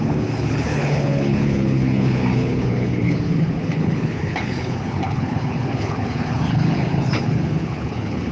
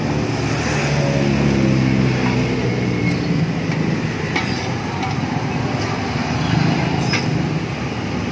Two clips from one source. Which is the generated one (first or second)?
first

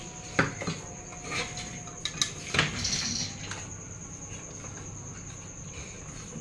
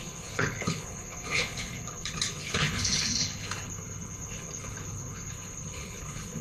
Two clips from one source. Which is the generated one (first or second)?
second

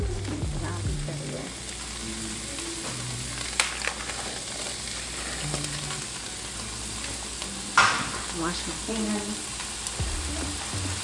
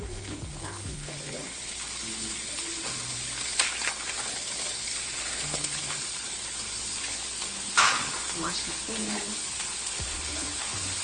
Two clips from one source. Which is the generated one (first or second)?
second